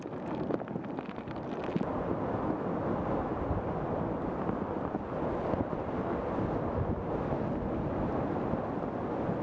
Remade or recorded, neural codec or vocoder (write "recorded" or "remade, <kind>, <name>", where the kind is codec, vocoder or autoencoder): recorded